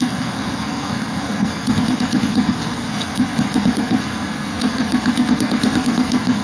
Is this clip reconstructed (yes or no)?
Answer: yes